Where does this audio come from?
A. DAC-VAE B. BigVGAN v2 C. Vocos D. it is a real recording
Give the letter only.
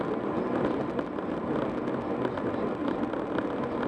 D